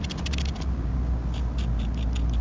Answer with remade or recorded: recorded